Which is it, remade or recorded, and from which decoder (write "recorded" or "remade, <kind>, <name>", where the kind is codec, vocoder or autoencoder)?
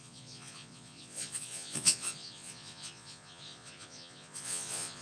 remade, vocoder, Vocos